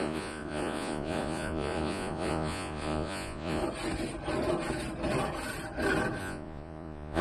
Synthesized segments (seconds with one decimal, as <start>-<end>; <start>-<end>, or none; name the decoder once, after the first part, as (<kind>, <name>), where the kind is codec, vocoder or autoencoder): 0.0-3.6 (vocoder, Vocos); 6.2-7.2